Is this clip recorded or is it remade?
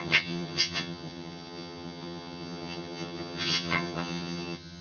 remade